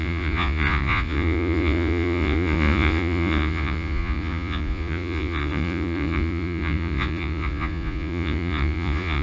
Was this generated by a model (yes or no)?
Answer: yes